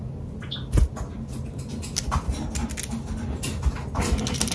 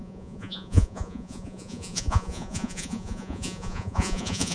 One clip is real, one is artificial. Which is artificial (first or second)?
second